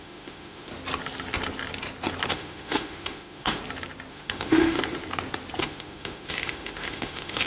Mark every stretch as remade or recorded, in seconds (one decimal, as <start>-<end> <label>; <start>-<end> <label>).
0.0-0.7 remade; 0.7-2.3 recorded; 2.3-3.6 remade; 3.6-4.1 recorded; 4.1-4.8 remade; 4.8-5.6 recorded; 5.6-7.5 remade